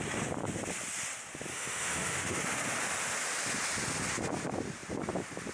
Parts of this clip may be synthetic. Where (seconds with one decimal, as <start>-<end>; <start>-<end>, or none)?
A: 1.5-2.4